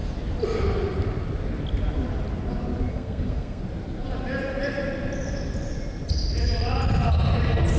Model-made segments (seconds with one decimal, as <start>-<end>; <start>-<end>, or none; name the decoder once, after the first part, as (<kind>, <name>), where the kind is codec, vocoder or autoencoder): 2.9-3.6 (codec, SNAC)